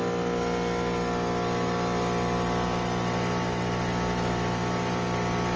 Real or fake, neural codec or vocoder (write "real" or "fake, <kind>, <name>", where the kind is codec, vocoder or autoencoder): real